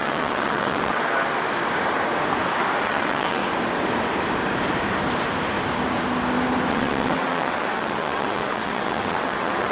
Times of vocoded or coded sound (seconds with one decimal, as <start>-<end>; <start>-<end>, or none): 0.0-1.0; 2.8-3.4; 6.7-9.7